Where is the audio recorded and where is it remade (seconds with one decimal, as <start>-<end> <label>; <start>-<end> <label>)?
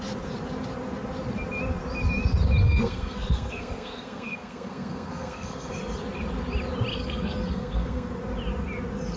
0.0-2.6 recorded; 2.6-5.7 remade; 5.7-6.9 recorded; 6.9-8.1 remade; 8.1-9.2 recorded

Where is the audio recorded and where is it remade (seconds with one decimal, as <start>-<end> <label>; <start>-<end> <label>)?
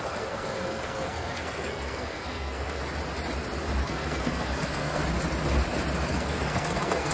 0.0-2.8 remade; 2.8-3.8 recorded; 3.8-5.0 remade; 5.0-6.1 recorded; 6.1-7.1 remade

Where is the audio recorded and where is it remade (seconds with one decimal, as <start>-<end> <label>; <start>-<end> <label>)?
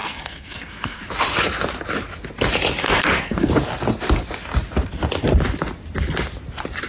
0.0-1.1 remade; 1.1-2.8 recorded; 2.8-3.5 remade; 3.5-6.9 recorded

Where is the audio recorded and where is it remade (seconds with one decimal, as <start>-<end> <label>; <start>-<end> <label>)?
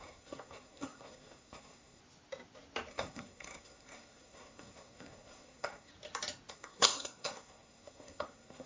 0.0-2.0 remade; 2.0-2.9 recorded; 2.9-5.9 remade; 5.9-6.5 recorded; 6.5-8.7 remade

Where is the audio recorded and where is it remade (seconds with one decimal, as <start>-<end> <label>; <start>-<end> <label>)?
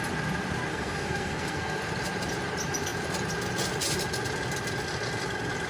0.0-0.7 recorded; 0.7-1.8 remade; 1.8-5.7 recorded